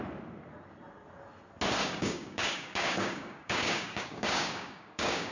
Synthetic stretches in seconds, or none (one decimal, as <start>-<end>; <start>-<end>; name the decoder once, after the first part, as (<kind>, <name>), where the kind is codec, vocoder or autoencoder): 1.8-5.3 (codec, DAC)